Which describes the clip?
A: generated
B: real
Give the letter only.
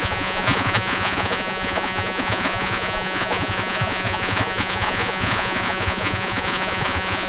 A